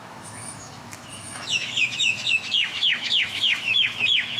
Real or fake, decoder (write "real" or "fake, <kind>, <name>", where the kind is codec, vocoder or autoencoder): fake, autoencoder, DAC-VAE